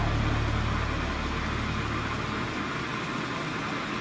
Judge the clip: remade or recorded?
recorded